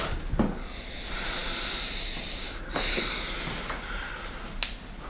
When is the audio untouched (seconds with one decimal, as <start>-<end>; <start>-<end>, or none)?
0.0-5.1